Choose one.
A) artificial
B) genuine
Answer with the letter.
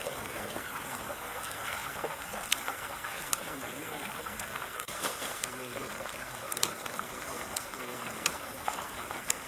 A